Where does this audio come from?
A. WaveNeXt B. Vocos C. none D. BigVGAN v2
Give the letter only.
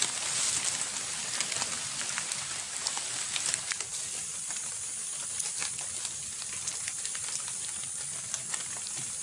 C